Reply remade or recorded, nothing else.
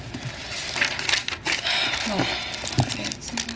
recorded